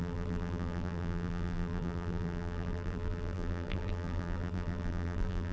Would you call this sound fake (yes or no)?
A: yes